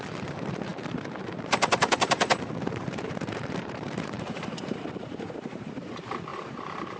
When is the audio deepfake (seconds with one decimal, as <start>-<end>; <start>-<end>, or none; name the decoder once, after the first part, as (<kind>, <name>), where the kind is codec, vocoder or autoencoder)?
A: 0.0-7.0 (vocoder, BigVGAN v2)